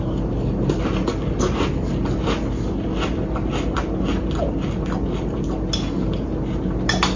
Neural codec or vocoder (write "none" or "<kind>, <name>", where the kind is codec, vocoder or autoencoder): none